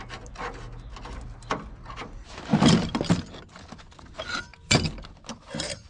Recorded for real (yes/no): yes